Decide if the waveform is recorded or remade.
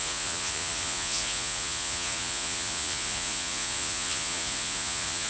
remade